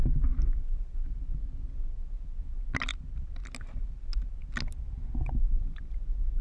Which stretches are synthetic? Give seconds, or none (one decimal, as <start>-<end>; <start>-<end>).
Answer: none